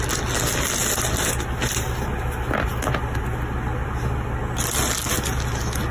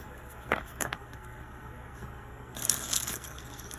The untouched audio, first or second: first